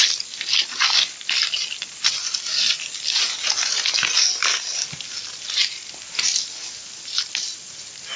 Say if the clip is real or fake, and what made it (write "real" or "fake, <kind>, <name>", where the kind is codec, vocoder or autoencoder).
real